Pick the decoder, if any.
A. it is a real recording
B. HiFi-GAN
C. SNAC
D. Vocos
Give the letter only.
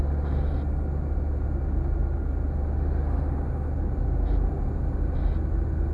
A